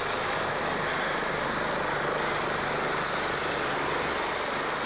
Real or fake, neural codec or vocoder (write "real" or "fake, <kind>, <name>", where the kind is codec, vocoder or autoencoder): real